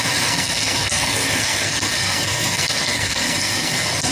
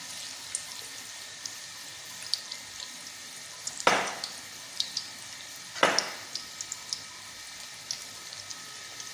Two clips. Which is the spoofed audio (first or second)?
first